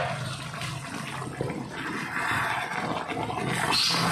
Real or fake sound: real